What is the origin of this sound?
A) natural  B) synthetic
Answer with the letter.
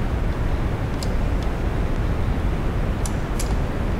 A